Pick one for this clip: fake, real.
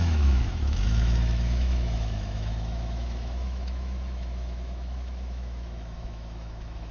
fake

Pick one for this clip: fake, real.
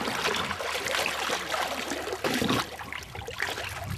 real